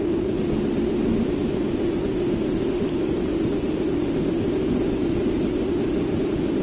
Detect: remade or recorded recorded